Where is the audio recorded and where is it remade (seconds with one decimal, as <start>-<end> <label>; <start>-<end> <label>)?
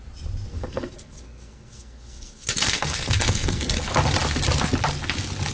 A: 0.0-0.5 recorded; 0.5-3.8 remade; 3.8-5.5 recorded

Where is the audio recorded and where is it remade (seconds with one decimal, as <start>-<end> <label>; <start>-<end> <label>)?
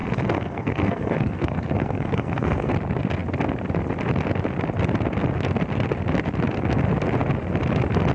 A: 0.0-2.7 remade; 2.7-8.1 recorded